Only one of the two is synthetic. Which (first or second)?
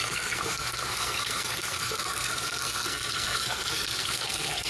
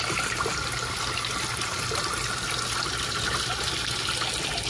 first